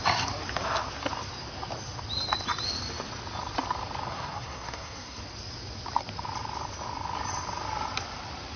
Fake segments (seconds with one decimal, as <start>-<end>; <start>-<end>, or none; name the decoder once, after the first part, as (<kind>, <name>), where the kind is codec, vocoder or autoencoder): 4.1-5.2 (codec, SNAC)